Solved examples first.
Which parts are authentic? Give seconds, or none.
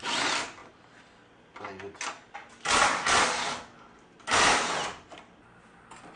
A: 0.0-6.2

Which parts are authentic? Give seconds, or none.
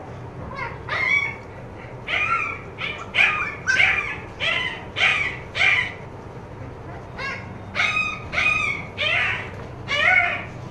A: 0.0-10.7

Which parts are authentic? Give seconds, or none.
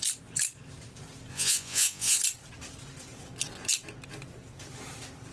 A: 0.0-1.3; 2.2-5.3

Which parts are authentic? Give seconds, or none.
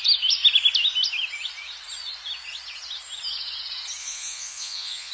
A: 0.0-4.0